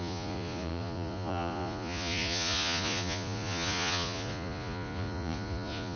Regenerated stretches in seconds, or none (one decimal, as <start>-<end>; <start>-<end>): 0.0-6.0